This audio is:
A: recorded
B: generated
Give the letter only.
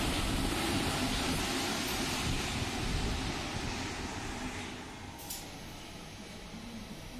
A